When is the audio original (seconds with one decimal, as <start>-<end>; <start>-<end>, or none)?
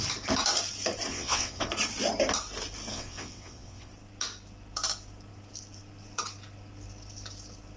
0.0-1.1; 1.7-2.9; 3.9-7.8